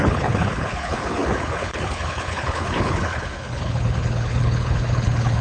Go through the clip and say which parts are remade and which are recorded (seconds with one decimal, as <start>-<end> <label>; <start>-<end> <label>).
0.0-5.4 remade